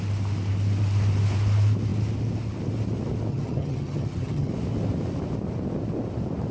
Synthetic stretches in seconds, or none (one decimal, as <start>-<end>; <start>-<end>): 3.3-4.5